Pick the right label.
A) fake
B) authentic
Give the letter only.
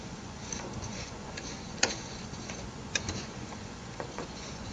A